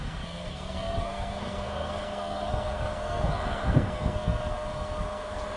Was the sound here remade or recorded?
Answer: remade